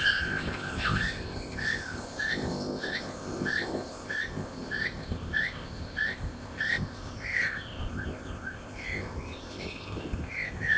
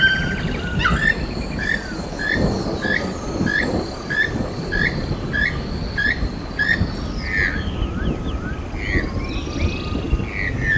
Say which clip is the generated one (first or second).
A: first